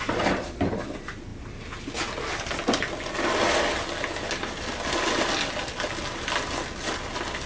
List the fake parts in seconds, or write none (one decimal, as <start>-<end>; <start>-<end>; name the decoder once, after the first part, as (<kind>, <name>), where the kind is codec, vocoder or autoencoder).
none